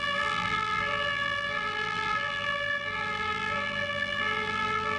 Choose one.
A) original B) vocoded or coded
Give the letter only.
B